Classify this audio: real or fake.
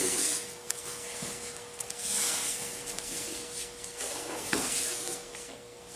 fake